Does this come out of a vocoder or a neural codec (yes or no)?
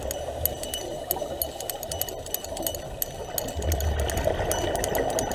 no